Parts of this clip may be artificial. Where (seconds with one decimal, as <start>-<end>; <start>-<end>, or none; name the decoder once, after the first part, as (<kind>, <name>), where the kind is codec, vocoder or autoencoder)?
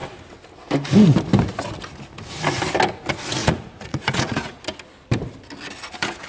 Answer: 3.4-4.6 (vocoder, Vocos)